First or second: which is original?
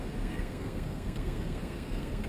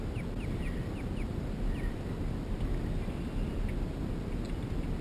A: second